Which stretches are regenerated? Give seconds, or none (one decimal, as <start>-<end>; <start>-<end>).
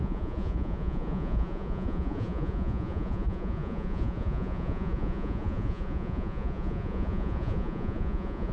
0.0-8.5